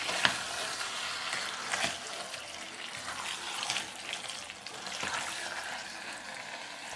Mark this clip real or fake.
real